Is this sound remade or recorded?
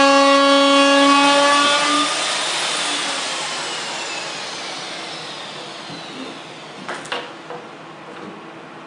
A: recorded